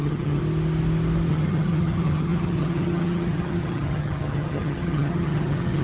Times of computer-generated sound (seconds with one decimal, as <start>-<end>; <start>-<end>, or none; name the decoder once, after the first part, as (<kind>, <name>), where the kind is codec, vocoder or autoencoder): 0.0-0.4 (vocoder, HiFi-GAN); 1.3-5.8